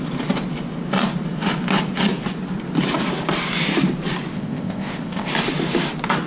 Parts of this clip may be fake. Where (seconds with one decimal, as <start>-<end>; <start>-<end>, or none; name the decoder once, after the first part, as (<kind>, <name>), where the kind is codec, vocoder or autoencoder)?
4.3-5.3 (codec, ZipCodec)

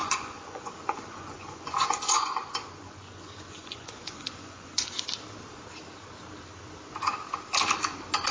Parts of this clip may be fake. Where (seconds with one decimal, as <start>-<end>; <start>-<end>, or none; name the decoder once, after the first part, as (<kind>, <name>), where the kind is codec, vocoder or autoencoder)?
0.0-5.0 (vocoder, Vocos)

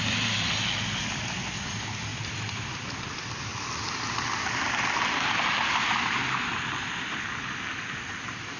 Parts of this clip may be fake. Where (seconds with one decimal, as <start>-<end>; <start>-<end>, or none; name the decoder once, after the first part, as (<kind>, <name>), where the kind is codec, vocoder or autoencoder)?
none

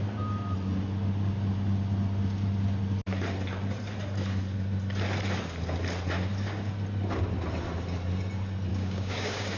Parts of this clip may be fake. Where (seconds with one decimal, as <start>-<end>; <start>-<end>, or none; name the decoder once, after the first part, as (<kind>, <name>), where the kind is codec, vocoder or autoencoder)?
8.7-9.6 (codec, DAC)

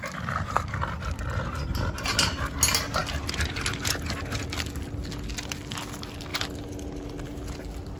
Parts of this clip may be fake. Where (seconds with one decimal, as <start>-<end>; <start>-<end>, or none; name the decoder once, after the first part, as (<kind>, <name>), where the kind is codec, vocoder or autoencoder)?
none